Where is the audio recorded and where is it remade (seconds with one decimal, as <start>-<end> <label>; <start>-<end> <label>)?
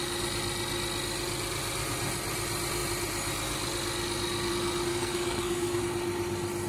0.0-4.9 recorded; 4.9-5.8 remade; 5.8-6.7 recorded